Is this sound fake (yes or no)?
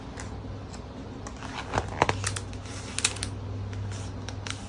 no